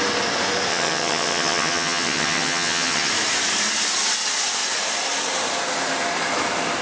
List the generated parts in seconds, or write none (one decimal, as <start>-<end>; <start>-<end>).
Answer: 0.7-3.1